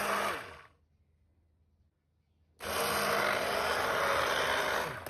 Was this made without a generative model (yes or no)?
yes